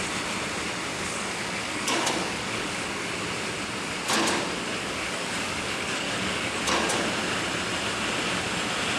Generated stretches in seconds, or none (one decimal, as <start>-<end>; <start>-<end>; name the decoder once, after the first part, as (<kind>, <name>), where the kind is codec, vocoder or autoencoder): 0.9-3.1 (codec, DAC); 4.8-6.6